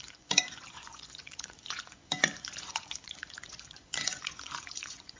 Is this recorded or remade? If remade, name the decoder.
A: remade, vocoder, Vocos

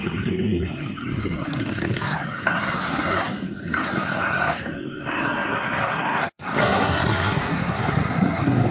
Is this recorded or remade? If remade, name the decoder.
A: remade, codec, SNAC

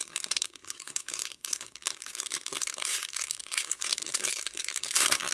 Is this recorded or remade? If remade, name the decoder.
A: remade, codec, SNAC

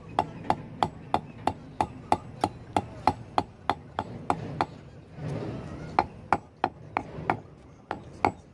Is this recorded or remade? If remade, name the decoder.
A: recorded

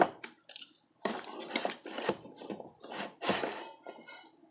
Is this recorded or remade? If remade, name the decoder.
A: recorded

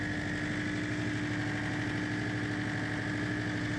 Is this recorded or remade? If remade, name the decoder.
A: recorded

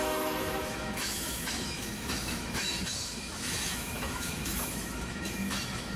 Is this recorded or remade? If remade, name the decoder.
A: remade, autoencoder, DAC-VAE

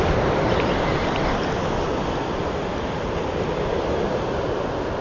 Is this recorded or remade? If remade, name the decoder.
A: recorded